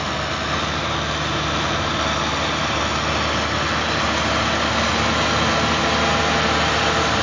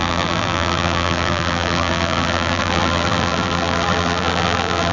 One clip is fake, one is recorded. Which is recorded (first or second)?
first